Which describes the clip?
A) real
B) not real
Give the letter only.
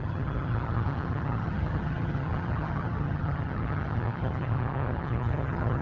B